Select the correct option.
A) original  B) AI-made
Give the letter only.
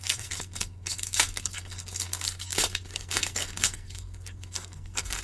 B